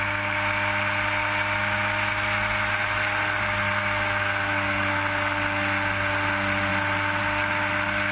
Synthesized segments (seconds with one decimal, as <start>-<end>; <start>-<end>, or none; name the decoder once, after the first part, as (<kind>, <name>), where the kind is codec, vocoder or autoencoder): none